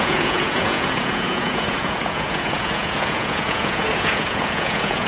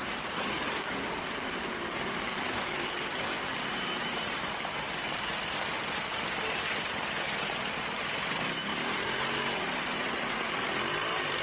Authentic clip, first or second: second